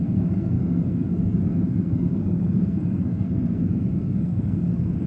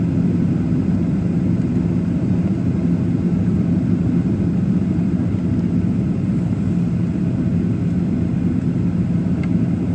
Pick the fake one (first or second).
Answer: first